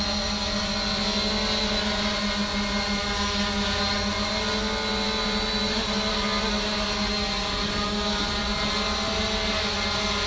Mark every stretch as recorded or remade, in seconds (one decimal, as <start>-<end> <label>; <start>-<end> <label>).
0.0-10.3 recorded